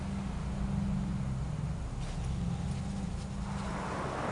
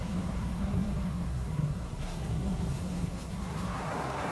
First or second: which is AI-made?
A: second